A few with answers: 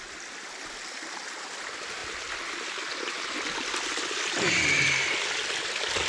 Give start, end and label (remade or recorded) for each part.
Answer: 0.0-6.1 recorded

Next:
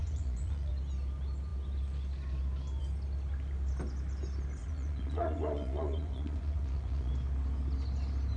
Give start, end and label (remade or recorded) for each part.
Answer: 0.0-0.7 remade; 0.7-4.6 recorded; 4.6-7.1 remade; 7.1-8.4 recorded

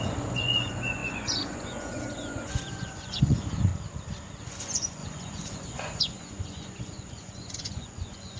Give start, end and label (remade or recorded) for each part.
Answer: 0.0-3.7 remade; 3.7-4.4 recorded; 4.4-8.4 remade

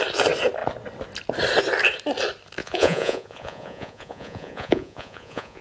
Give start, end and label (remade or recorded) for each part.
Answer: 0.0-2.6 recorded; 2.6-5.6 remade